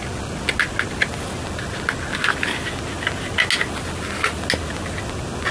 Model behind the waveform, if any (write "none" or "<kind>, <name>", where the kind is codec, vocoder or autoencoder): none